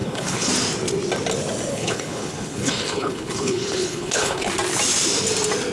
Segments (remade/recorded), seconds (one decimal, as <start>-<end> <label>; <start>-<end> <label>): 0.0-0.5 remade; 0.5-1.7 recorded; 1.7-4.5 remade; 4.5-5.7 recorded